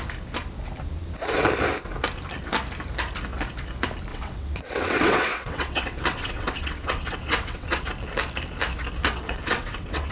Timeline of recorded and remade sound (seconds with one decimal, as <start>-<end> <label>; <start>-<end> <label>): 0.0-4.1 recorded; 4.1-7.9 remade; 7.9-9.0 recorded; 9.0-10.1 remade